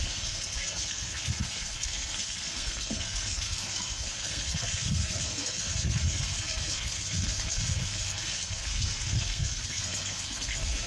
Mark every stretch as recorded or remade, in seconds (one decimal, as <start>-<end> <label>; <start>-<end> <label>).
0.0-10.9 remade